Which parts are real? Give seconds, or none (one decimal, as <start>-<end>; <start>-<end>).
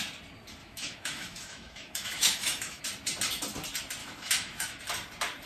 0.0-0.6; 2.8-4.0; 4.8-5.5